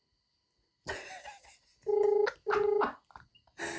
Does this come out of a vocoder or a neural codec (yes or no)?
no